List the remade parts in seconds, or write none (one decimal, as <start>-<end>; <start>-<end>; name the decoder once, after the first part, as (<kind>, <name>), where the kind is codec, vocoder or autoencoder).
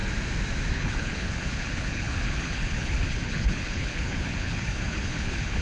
0.7-5.6 (codec, HILCodec)